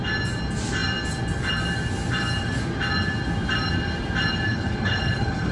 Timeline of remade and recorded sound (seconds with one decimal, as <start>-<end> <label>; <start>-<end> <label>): 0.0-4.5 recorded; 4.5-5.5 remade